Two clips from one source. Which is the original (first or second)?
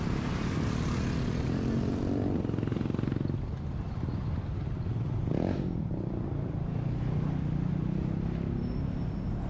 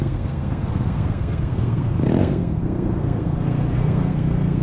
first